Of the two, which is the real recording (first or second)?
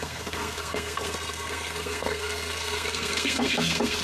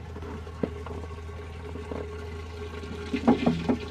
second